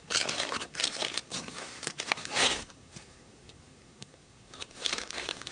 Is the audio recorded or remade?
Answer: remade